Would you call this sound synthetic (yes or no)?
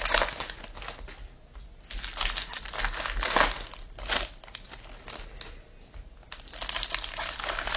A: no